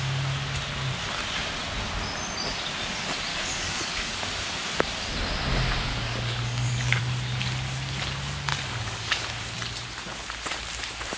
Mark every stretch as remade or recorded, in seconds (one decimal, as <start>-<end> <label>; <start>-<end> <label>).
0.0-3.3 recorded; 3.3-4.2 remade; 4.2-5.9 recorded; 5.9-7.0 remade; 7.0-8.5 recorded; 8.5-9.2 remade; 9.2-11.2 recorded